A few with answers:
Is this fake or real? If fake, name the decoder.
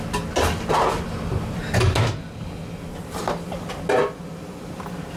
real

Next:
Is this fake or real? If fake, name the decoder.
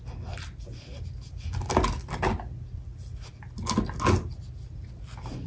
real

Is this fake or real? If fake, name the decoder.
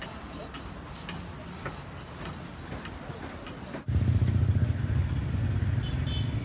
real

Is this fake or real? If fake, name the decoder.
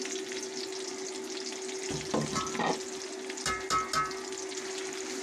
real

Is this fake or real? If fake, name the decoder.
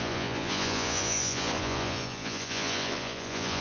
fake, vocoder, Vocos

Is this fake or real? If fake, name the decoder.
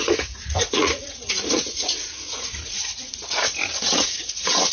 fake, vocoder, Vocos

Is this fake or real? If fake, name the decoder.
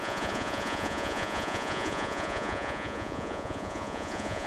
fake, vocoder, Vocos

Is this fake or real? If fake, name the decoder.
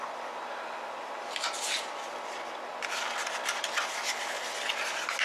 real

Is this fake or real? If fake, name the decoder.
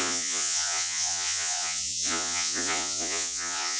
fake, vocoder, Vocos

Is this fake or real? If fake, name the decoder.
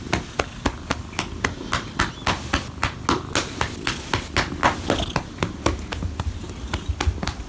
real